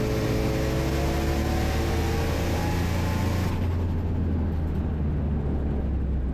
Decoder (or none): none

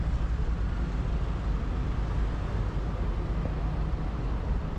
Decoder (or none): none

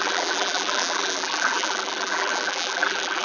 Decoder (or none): vocoder, BigVGAN v2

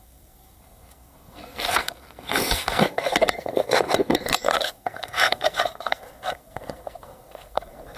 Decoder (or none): codec, SNAC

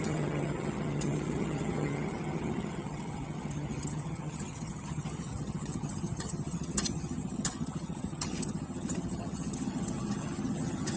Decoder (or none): vocoder, HiFi-GAN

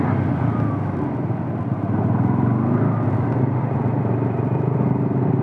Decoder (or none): none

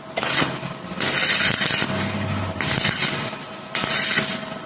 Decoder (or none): none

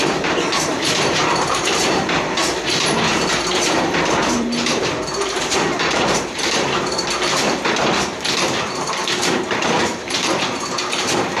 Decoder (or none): vocoder, BigVGAN v2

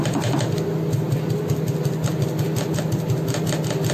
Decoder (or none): none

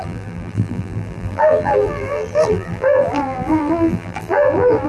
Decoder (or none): vocoder, BigVGAN v2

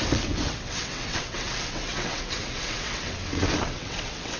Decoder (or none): vocoder, WaveNeXt